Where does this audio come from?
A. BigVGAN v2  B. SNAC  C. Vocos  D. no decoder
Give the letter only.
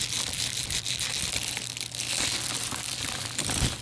D